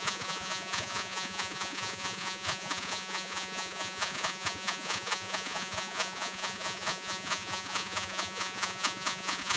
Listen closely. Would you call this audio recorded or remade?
remade